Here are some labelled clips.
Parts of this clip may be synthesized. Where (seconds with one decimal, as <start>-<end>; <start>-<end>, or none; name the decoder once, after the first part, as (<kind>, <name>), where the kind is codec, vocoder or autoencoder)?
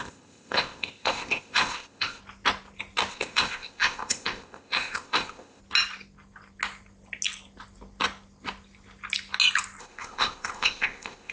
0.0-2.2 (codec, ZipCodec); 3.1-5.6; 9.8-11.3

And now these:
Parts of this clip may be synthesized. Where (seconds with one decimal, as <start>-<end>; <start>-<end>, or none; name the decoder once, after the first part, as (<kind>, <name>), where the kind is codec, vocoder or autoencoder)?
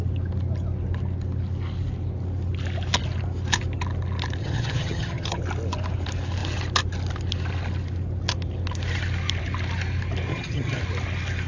4.4-5.4 (vocoder, HiFi-GAN); 10.3-10.8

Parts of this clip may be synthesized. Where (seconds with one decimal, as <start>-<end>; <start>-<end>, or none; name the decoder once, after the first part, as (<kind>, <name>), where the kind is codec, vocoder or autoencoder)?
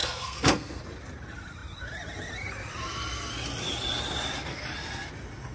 0.0-0.8 (codec, SNAC)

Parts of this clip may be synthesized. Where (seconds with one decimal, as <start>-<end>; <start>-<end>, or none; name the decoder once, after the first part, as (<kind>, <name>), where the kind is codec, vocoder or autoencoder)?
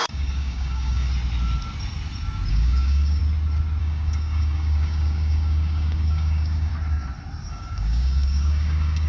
0.0-1.1 (codec, DAC); 2.5-3.2; 3.8-6.7; 7.5-9.1